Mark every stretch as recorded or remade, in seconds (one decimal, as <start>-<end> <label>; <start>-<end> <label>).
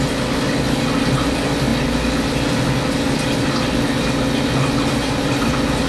0.0-5.0 recorded; 5.0-5.5 remade; 5.5-5.9 recorded